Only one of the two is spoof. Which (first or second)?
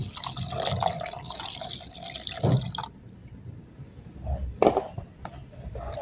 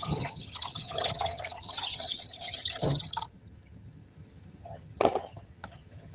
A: second